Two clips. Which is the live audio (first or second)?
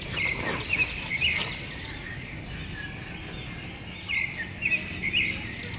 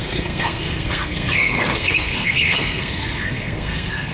first